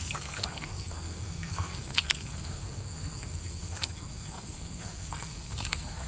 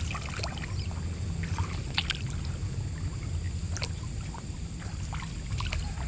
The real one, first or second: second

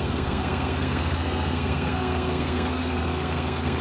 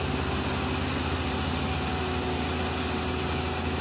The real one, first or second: second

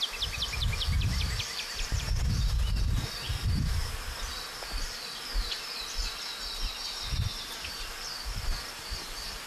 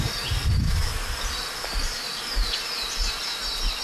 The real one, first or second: second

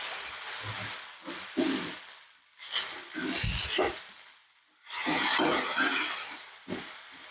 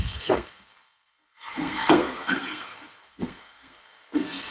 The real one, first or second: first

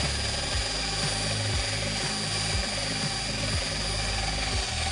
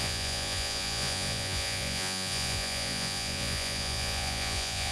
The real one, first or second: first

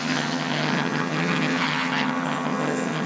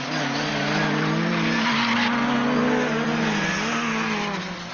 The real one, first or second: second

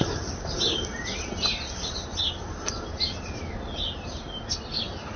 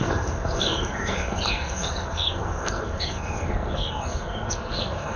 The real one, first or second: first